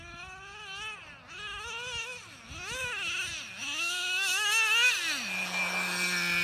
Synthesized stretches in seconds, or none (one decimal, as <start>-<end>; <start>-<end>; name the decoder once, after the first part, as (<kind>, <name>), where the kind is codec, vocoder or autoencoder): 3.6-4.5 (autoencoder, DAC-VAE)